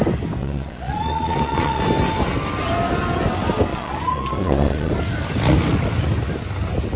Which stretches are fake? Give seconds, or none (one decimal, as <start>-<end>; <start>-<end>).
0.4-1.8; 3.7-4.9